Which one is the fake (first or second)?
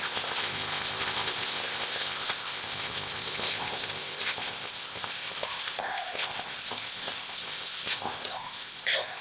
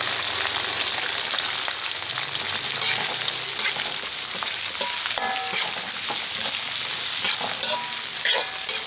first